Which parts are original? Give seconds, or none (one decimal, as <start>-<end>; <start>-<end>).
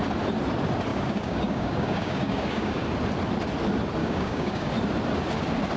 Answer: 0.0-0.9; 2.8-4.0; 4.7-5.8